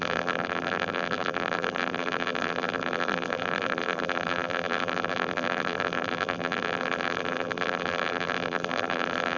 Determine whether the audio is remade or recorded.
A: remade